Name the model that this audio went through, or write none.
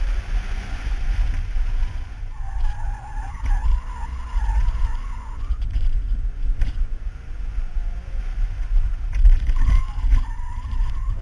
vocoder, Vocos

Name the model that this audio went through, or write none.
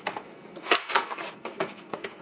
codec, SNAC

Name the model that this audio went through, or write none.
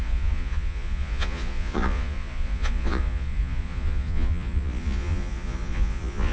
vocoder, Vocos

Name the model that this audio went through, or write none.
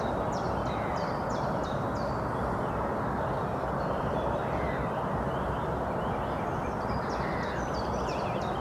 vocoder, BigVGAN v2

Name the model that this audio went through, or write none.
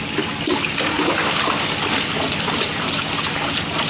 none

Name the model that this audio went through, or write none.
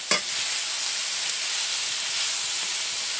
none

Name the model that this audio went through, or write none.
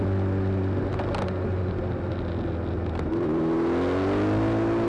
none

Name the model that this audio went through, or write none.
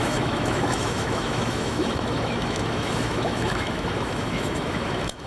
autoencoder, DAC-VAE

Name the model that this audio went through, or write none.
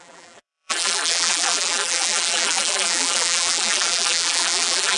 vocoder, BigVGAN v2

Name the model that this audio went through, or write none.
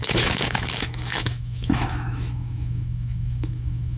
autoencoder, DAC-VAE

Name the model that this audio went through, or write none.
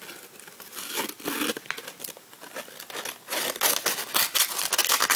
none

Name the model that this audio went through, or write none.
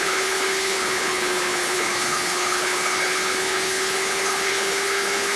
codec, HILCodec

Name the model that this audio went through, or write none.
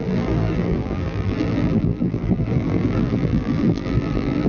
vocoder, BigVGAN v2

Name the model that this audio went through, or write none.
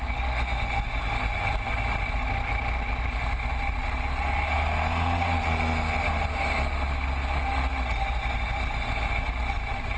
none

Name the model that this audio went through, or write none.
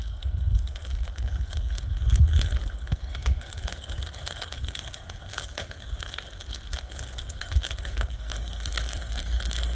codec, SNAC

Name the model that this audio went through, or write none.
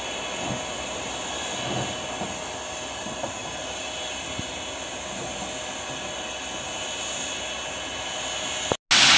none